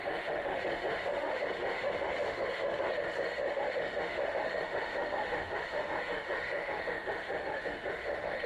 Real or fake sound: fake